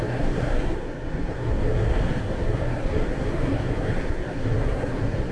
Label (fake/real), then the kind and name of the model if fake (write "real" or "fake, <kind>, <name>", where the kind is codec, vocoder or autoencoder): fake, codec, SNAC